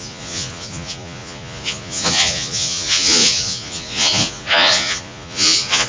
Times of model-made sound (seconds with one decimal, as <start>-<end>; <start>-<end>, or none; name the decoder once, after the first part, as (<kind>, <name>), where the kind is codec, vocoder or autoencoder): 0.0-5.9 (vocoder, Vocos)